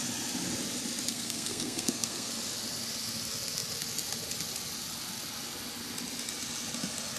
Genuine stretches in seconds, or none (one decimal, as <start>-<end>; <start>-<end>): 0.0-1.1; 2.3-7.2